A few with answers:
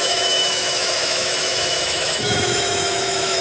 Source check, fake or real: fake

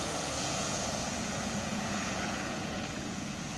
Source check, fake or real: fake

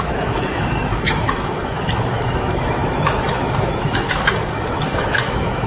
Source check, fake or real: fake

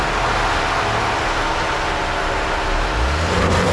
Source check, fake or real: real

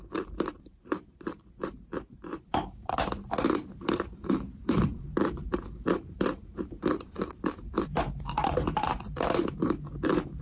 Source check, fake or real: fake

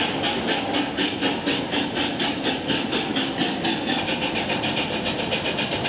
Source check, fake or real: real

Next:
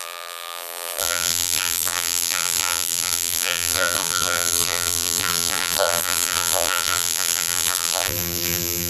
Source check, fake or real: fake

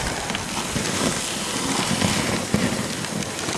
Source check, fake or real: real